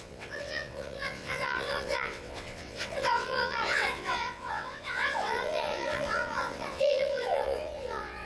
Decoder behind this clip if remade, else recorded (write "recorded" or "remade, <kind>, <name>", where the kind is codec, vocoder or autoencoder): remade, vocoder, WaveNeXt